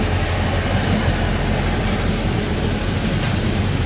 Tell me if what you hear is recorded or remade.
recorded